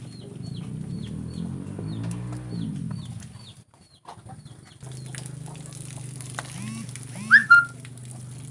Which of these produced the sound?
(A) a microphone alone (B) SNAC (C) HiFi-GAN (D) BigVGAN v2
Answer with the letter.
A